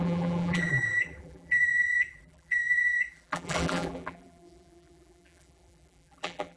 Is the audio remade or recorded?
remade